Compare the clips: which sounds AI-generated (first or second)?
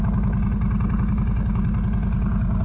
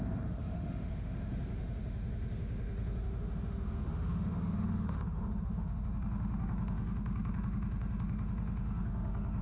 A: second